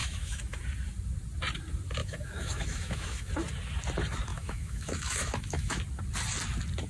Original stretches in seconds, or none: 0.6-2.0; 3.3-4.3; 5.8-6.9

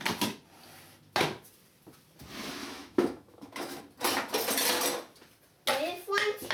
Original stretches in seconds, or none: 0.0-2.6; 3.8-6.5